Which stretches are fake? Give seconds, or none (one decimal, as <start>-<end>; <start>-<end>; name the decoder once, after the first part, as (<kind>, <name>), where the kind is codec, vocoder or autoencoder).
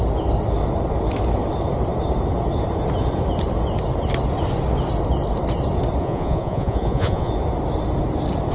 6.0-7.3 (vocoder, Vocos)